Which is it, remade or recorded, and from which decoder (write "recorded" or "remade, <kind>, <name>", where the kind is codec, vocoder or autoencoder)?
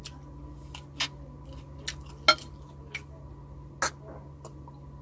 recorded